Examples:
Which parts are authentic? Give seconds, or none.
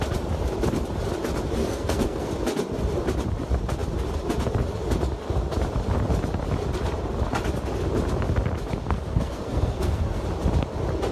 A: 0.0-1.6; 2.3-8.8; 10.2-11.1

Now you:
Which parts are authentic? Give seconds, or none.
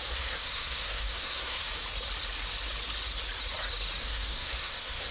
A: 1.7-4.0